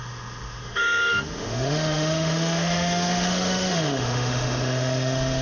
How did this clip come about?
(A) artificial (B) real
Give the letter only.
A